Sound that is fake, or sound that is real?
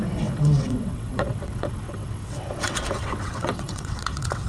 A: fake